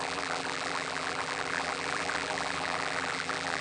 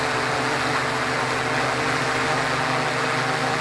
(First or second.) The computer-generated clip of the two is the first